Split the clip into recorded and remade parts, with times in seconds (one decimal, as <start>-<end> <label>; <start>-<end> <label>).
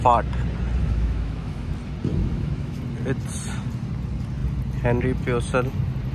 0.0-0.8 recorded; 0.8-1.7 remade; 1.7-2.1 recorded; 2.1-2.8 remade; 2.8-6.1 recorded